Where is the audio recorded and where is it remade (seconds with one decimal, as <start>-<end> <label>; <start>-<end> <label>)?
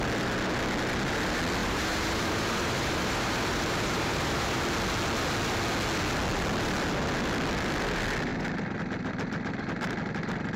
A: 0.0-1.6 recorded; 1.6-4.6 remade; 4.6-10.6 recorded